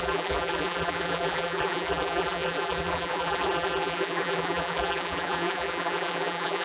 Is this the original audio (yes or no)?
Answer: no